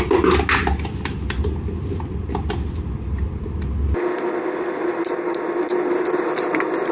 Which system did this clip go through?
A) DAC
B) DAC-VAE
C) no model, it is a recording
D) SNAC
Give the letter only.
C